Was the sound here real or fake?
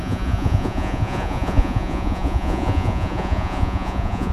fake